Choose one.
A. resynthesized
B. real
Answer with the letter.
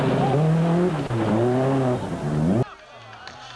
B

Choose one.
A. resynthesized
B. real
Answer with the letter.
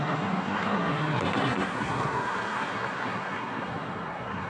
A